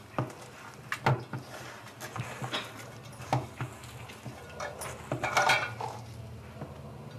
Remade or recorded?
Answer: recorded